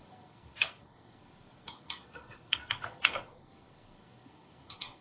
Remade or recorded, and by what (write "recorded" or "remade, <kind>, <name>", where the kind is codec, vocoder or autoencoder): remade, codec, SNAC